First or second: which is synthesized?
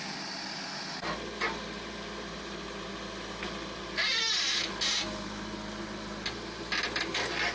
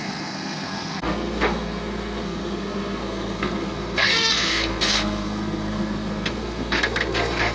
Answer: second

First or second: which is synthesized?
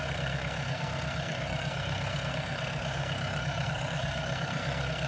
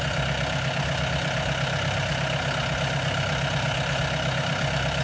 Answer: first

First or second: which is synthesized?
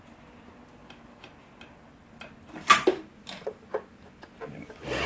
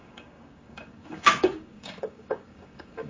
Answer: second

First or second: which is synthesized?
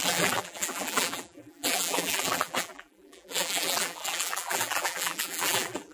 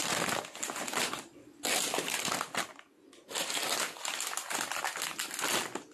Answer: first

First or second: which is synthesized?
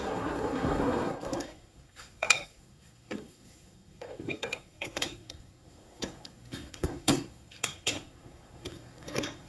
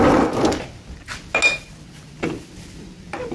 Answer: first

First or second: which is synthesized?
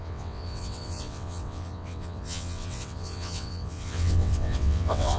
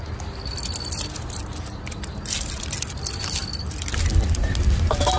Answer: first